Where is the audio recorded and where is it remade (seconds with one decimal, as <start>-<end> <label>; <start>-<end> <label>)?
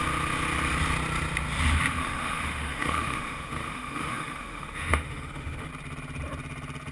0.0-2.0 recorded; 2.0-5.7 remade; 5.7-6.9 recorded